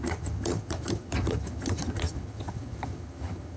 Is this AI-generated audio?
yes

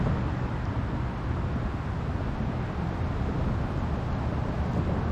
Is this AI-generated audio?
no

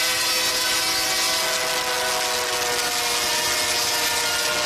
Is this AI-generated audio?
no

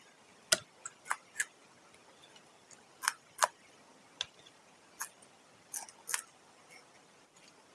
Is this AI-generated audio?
no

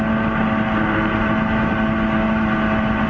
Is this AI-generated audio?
no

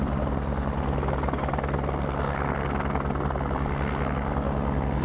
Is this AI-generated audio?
no